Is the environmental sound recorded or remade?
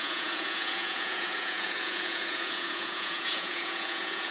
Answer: remade